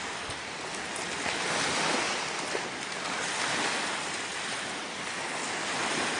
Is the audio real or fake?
real